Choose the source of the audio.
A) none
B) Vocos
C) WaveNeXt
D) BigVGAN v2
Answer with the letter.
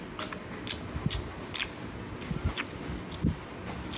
A